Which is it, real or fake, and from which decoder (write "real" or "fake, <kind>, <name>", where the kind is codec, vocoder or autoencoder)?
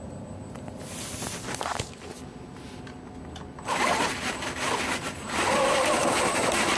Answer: real